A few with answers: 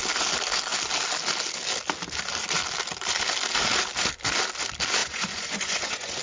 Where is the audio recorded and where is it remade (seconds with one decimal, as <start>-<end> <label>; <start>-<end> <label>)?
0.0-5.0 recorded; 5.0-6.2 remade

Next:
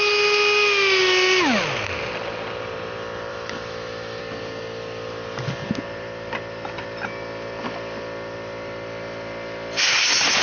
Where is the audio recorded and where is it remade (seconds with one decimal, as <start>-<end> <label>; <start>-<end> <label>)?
0.0-3.3 recorded; 3.3-4.2 remade; 4.2-10.4 recorded

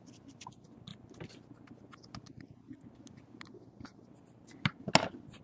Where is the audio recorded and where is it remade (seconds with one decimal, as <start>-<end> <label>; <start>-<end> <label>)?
0.0-5.4 recorded

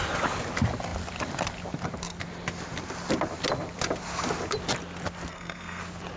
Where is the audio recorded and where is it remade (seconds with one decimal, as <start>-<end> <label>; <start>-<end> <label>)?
0.0-5.3 recorded; 5.3-5.8 remade; 5.8-6.2 recorded

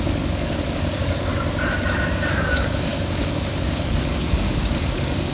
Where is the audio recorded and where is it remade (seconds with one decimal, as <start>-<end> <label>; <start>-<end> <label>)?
0.0-1.3 remade; 1.3-2.2 recorded; 2.2-5.3 remade

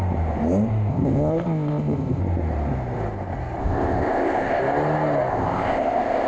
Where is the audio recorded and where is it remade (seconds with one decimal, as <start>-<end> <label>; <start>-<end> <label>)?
0.0-0.9 recorded; 0.9-2.2 remade; 2.2-3.6 recorded; 3.6-4.6 remade; 4.6-5.3 recorded; 5.3-6.3 remade